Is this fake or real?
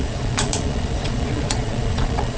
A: fake